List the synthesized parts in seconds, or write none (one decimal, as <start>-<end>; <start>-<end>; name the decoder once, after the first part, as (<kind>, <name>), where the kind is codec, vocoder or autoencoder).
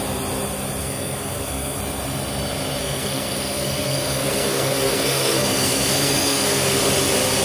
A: 0.8-1.8 (codec, SNAC); 2.8-6.8